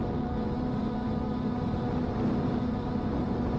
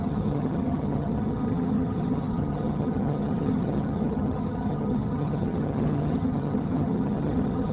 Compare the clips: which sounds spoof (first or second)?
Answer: second